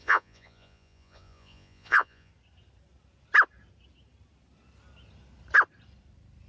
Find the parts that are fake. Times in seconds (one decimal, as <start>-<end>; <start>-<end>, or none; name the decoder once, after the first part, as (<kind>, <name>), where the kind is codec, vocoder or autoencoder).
0.0-2.3 (vocoder, Vocos)